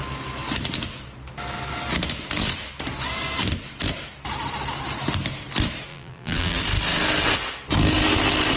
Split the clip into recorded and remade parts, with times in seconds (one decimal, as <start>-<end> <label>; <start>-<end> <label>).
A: 0.0-5.9 recorded; 5.9-6.6 remade; 6.6-8.6 recorded

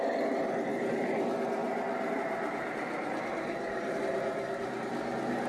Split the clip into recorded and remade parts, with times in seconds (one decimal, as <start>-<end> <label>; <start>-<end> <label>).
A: 0.0-0.7 recorded; 0.7-1.2 remade; 1.2-1.6 recorded; 1.6-4.9 remade; 4.9-5.5 recorded

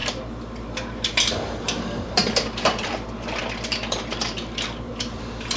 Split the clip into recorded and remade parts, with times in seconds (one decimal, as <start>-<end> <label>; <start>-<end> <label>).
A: 0.0-5.6 remade

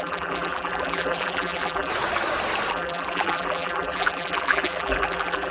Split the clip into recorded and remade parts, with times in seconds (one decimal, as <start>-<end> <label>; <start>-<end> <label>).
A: 0.0-1.9 remade; 1.9-2.7 recorded; 2.7-5.5 remade

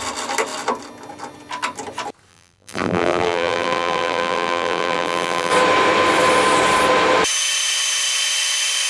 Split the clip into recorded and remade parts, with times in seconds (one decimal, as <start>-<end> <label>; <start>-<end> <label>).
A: 0.0-2.3 recorded; 2.3-5.5 remade; 5.5-8.9 recorded